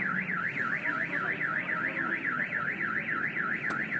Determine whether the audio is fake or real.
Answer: real